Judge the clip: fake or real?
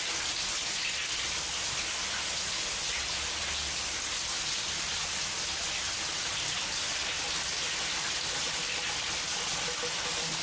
real